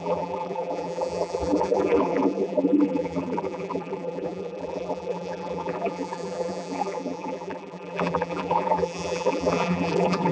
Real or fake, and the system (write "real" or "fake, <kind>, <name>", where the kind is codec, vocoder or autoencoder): fake, vocoder, BigVGAN v2